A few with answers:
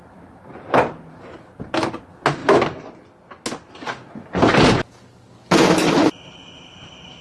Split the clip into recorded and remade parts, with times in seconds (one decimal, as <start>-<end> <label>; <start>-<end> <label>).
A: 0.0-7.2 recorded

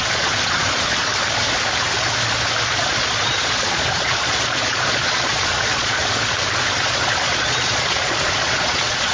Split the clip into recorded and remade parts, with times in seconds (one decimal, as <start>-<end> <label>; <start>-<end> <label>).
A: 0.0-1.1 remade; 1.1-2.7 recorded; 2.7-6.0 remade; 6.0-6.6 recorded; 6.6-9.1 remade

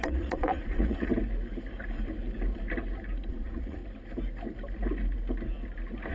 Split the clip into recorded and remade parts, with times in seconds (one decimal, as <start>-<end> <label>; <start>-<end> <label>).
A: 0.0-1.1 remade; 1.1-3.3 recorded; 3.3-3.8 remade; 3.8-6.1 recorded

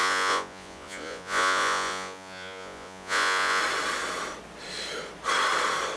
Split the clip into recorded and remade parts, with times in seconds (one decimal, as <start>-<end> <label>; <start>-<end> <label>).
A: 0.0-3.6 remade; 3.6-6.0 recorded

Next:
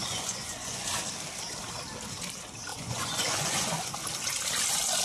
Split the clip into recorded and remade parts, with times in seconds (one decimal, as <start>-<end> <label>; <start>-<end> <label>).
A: 0.0-0.9 remade; 0.9-2.7 recorded; 2.7-3.9 remade; 3.9-5.0 recorded

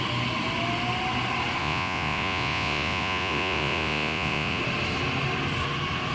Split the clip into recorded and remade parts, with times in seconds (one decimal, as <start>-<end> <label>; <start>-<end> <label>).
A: 0.0-1.6 recorded; 1.6-4.6 remade; 4.6-6.1 recorded